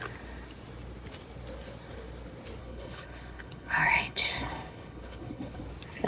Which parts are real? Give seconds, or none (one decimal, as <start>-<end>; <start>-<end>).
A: 0.0-2.6; 5.6-6.1